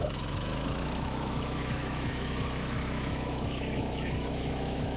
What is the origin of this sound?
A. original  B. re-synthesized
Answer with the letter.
B